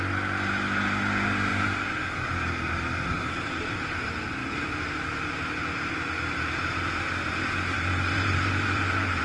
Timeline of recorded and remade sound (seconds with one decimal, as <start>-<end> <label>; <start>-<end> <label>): 0.0-1.5 recorded; 1.5-4.0 remade; 4.0-4.4 recorded; 4.4-9.2 remade